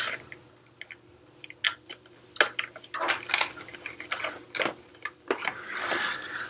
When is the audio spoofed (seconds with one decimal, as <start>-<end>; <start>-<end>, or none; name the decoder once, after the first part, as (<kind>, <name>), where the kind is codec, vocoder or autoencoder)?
3.7-4.2 (vocoder, BigVGAN v2); 4.9-5.6